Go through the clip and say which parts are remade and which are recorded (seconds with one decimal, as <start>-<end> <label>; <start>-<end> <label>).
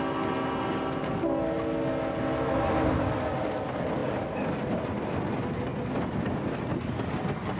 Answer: 0.0-7.6 recorded